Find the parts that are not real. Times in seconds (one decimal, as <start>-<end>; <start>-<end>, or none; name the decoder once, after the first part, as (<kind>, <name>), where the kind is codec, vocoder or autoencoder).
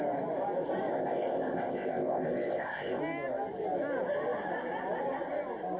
0.9-3.0 (codec, ZipCodec)